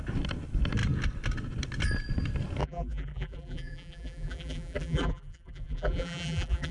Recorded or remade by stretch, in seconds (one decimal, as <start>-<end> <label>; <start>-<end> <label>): 0.0-2.6 recorded; 2.6-6.7 remade